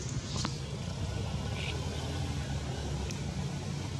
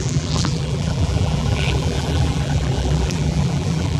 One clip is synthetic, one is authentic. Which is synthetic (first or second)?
second